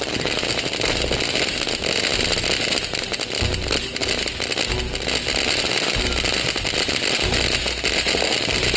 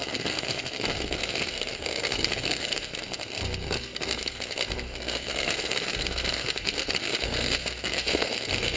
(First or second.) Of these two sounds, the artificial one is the second